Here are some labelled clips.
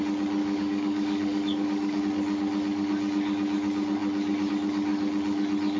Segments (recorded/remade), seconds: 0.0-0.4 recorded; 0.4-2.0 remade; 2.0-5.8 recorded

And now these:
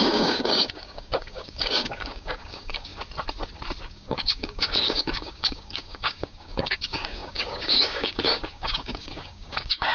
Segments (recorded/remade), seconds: 0.0-2.9 remade; 2.9-3.8 recorded; 3.8-9.9 remade

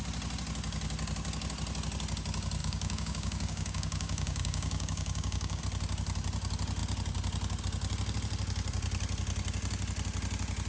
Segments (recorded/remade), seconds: 0.0-2.6 recorded; 2.6-5.6 remade; 5.6-10.7 recorded

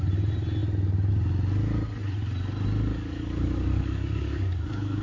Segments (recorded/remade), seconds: 0.0-2.9 recorded; 2.9-5.0 remade